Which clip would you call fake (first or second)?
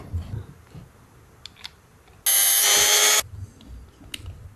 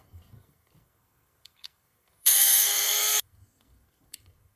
second